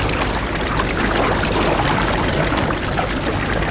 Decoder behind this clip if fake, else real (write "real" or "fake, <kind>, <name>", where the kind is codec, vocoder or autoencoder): real